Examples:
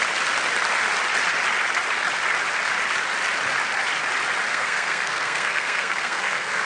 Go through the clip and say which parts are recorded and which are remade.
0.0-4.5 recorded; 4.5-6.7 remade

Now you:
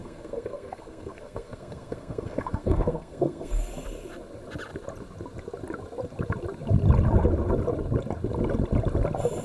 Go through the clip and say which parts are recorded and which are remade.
0.0-3.7 remade; 3.7-9.4 recorded

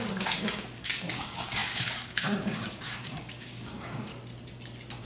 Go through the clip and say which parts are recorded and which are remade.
0.0-4.1 remade; 4.1-5.0 recorded